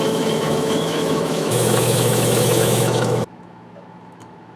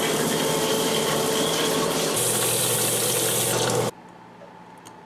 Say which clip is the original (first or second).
second